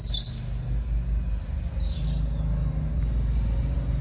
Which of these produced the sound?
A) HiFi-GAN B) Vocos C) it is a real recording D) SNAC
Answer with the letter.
C